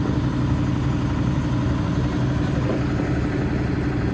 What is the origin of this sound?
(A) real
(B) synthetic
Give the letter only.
A